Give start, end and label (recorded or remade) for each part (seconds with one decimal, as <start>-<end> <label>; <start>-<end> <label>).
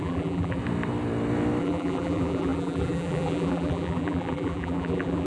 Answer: 0.0-0.6 remade; 0.6-1.6 recorded; 1.6-5.3 remade